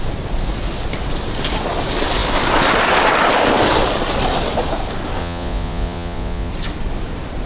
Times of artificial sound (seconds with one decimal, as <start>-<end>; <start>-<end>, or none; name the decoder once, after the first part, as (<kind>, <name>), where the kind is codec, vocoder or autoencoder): 5.2-6.5 (vocoder, Vocos)